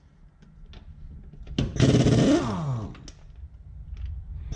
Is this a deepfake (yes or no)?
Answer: no